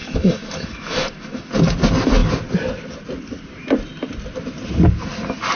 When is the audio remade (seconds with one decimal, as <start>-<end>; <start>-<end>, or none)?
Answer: 0.0-1.5

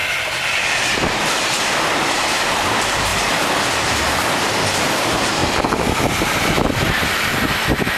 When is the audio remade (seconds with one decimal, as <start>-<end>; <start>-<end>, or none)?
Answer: 2.1-3.1; 4.8-5.4; 7.2-8.0

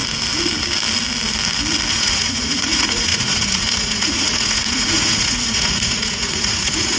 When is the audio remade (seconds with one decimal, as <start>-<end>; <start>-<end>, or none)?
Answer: 1.9-7.0

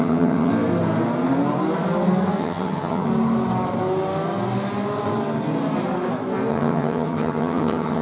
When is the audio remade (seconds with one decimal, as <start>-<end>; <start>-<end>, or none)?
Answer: 0.0-0.5; 2.4-3.1; 6.5-8.0

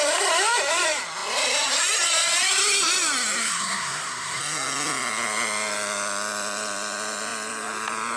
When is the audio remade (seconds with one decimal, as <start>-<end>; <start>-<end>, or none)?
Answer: 3.4-4.4

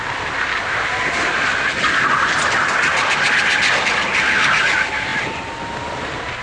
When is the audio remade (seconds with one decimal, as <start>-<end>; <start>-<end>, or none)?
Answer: none

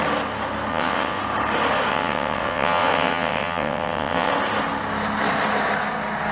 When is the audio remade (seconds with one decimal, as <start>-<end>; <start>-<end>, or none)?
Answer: 0.7-1.2; 1.9-4.3

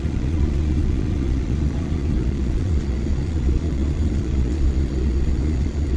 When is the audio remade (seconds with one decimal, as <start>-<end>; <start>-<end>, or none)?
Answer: 0.0-6.0